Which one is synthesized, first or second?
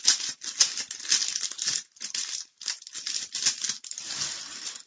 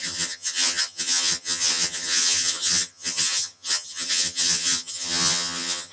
second